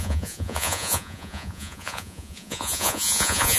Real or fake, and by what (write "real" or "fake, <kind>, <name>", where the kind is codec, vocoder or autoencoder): fake, vocoder, Vocos